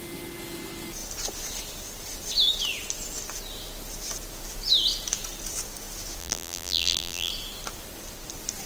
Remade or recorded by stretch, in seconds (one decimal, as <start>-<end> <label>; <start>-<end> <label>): 0.0-6.2 recorded; 6.2-7.3 remade; 7.3-8.7 recorded